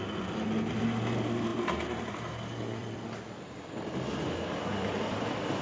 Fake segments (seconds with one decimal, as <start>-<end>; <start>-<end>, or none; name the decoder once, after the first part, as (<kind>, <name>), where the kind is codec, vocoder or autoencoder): 2.8-4.2 (vocoder, BigVGAN v2); 4.7-5.6